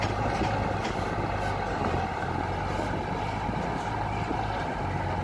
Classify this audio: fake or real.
real